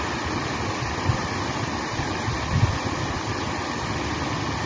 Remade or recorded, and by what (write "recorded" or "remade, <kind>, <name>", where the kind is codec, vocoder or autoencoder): recorded